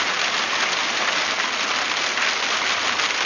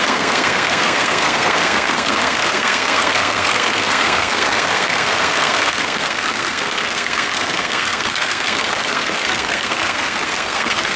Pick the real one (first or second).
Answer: first